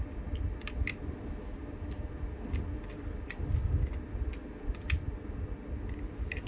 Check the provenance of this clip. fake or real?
real